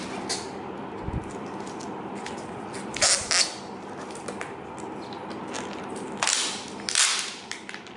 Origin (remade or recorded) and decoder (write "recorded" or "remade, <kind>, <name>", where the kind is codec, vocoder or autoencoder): recorded